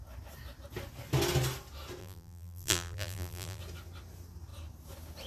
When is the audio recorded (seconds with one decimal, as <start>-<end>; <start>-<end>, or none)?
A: 0.0-2.0; 3.6-5.3